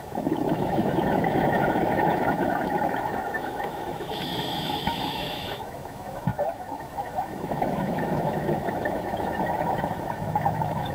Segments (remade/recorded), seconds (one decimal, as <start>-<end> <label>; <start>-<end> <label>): 0.0-10.9 remade